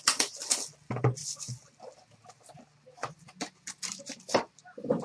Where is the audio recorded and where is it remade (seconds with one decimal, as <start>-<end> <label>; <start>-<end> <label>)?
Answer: 0.0-5.0 recorded